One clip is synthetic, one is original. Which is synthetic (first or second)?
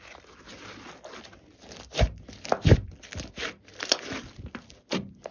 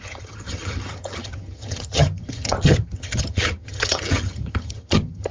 second